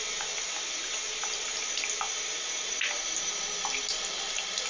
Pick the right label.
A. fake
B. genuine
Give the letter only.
B